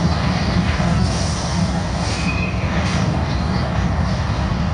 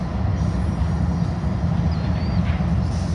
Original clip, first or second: second